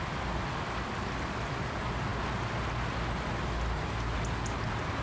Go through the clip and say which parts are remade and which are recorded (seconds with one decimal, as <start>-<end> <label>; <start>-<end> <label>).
0.0-5.0 recorded